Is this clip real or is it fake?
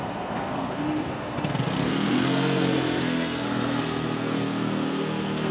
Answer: fake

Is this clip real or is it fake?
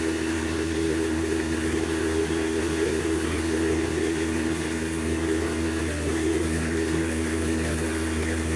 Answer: fake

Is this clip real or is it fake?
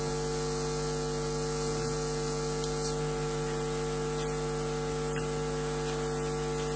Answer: real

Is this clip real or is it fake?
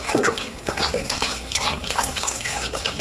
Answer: fake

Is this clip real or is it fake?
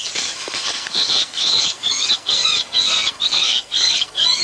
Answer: fake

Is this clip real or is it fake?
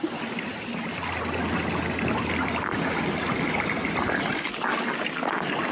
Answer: real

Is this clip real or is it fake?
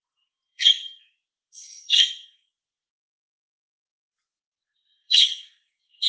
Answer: fake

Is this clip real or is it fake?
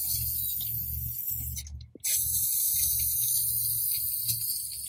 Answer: real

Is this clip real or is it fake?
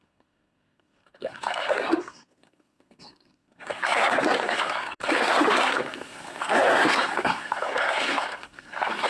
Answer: fake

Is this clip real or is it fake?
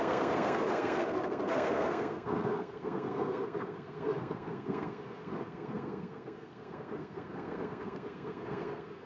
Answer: fake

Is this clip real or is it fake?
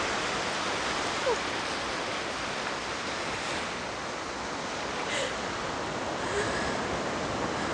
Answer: real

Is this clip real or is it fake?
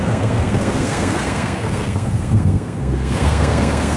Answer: fake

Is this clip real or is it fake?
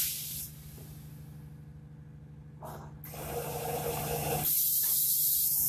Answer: real